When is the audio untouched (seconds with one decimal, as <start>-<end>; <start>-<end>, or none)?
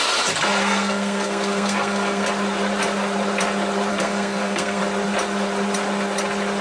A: 0.0-0.6; 2.3-3.9; 4.8-6.6